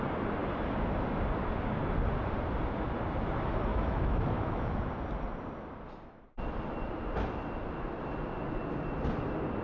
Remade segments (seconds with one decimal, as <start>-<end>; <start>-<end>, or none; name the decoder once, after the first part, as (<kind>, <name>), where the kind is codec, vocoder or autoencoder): 3.7-4.9 (autoencoder, DAC-VAE)